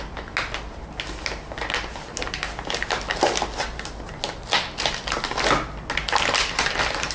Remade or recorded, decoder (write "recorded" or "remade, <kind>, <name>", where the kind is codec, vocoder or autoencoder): recorded